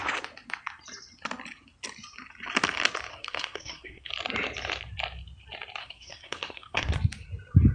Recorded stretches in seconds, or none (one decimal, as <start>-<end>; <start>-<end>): 0.0-3.1; 4.1-5.8; 6.9-7.7